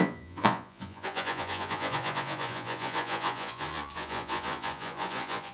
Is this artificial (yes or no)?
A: yes